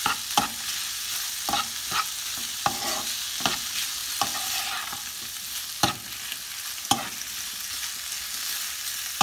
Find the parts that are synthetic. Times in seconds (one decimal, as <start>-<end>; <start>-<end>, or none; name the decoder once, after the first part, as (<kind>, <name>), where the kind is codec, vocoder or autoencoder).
none